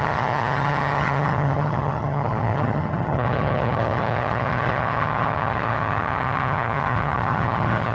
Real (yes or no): no